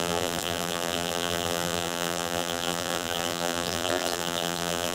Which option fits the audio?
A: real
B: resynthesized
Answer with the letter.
B